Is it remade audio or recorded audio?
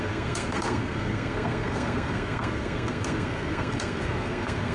remade